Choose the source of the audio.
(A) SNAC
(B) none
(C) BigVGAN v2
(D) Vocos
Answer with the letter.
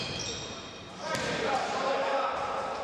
C